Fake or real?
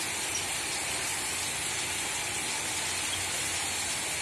real